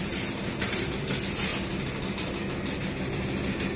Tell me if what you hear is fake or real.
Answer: real